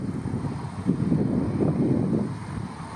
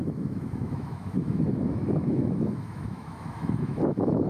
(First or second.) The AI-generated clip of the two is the second